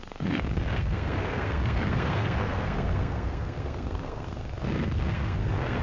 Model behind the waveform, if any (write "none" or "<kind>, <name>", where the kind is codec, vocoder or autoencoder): codec, SNAC